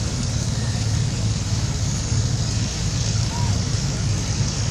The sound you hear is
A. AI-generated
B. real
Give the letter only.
A